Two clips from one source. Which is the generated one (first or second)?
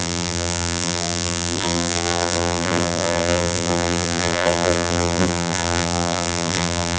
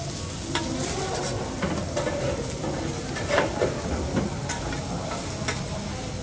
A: first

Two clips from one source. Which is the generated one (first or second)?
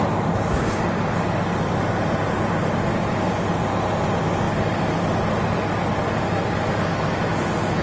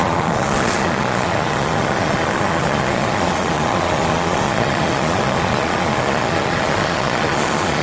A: second